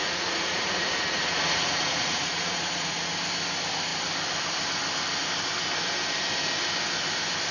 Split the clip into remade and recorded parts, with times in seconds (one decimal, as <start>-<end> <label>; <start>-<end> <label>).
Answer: 0.0-3.1 remade; 3.1-7.5 recorded